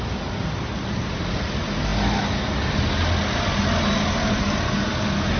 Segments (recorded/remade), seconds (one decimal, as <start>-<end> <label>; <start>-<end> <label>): 0.0-5.4 recorded